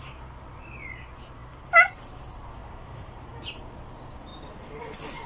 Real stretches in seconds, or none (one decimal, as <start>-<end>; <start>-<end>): 0.0-2.6; 3.6-5.3